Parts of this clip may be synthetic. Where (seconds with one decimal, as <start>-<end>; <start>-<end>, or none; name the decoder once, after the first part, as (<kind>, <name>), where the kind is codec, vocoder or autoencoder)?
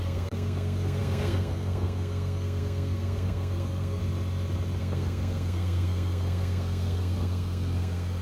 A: 0.0-4.0 (codec, SNAC); 4.8-8.2